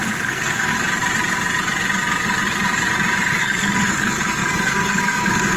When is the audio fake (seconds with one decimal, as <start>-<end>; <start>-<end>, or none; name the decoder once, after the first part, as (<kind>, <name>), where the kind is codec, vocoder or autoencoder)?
0.0-0.7 (codec, SNAC); 3.4-5.6